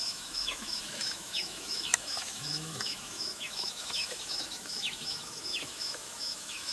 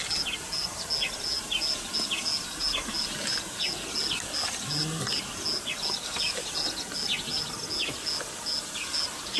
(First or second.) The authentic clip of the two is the second